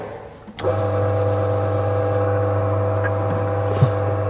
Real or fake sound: real